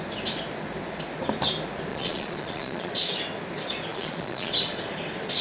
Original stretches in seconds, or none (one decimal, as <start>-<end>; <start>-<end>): 0.0-1.9; 3.1-3.9; 4.5-5.4

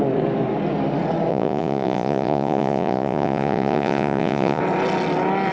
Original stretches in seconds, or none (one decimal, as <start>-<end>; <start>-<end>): 0.0-1.3; 4.6-5.5

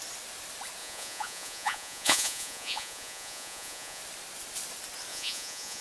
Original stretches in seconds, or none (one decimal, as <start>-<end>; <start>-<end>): 0.0-0.8; 4.0-5.1

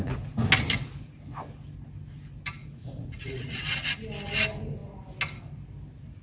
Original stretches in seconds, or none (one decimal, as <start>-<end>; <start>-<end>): 0.0-2.6; 3.6-6.2

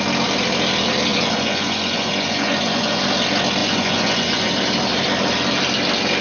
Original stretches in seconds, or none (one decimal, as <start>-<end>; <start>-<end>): 0.0-1.1; 3.0-3.6; 4.5-6.2

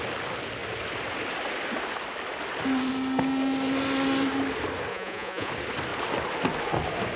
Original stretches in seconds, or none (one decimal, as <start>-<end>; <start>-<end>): 0.0-4.9; 5.5-7.2

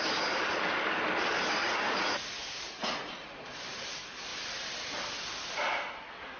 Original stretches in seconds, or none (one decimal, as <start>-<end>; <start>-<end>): 0.0-1.6; 3.1-6.4

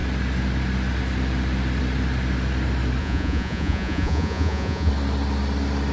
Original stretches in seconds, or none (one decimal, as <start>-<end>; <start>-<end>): 0.0-3.0; 4.9-5.9